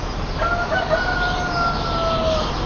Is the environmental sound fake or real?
real